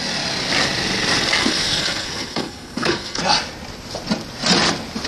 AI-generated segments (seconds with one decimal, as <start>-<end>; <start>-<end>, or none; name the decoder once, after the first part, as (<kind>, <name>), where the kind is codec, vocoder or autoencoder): 1.4-3.2 (codec, SNAC)